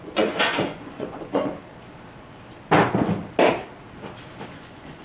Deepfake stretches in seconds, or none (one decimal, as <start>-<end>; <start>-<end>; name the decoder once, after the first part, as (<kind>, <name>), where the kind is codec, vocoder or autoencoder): 0.0-1.5 (vocoder, Vocos); 4.5-5.0